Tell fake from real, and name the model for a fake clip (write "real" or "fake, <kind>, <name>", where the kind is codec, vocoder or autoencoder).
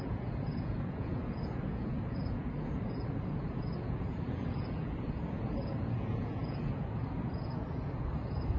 fake, vocoder, Vocos